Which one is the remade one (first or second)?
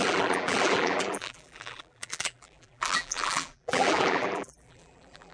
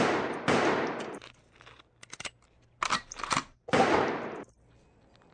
first